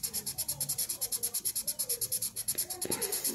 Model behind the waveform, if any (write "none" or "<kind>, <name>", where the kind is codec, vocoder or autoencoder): none